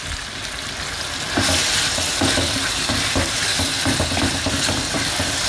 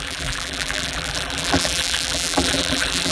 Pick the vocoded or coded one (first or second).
second